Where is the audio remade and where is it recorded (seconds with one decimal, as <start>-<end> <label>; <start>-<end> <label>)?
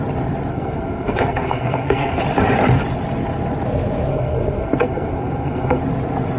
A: 0.0-0.5 recorded; 0.5-2.2 remade; 2.2-4.1 recorded; 4.1-5.8 remade; 5.8-6.4 recorded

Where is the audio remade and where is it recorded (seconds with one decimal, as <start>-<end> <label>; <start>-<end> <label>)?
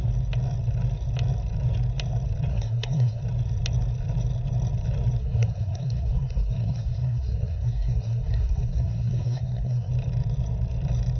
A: 0.0-2.5 recorded; 2.5-3.2 remade; 3.2-5.2 recorded; 5.2-9.9 remade; 9.9-11.2 recorded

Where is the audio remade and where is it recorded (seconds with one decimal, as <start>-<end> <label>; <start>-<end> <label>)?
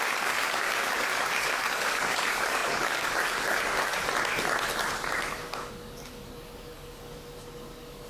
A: 0.0-3.9 remade; 3.9-4.8 recorded; 4.8-8.1 remade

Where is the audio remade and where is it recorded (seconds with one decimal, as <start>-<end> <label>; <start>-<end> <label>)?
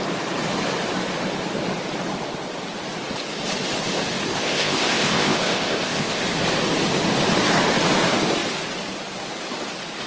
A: 0.0-4.3 recorded; 4.3-6.2 remade; 6.2-10.1 recorded